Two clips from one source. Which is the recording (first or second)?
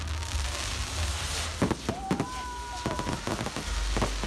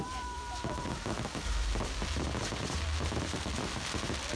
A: first